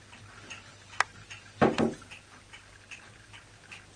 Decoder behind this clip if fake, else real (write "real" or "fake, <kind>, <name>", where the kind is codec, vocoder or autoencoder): real